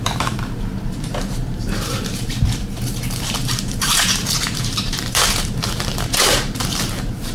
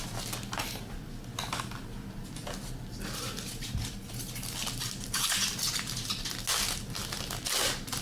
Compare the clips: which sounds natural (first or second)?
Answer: second